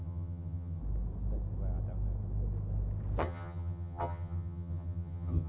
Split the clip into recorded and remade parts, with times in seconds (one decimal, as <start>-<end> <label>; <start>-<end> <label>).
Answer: 0.0-0.8 remade; 0.8-3.2 recorded; 3.2-5.5 remade